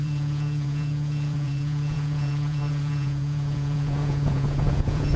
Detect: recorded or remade remade